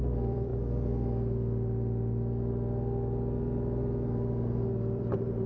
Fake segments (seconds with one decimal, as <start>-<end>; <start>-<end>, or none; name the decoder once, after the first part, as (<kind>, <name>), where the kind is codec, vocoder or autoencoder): 0.0-0.5 (vocoder, BigVGAN v2); 3.8-5.5